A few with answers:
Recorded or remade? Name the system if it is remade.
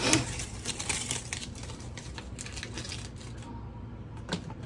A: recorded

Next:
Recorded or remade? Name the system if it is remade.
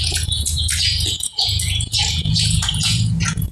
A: remade, vocoder, Vocos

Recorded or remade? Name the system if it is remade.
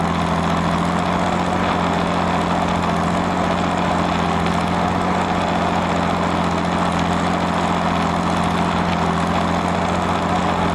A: recorded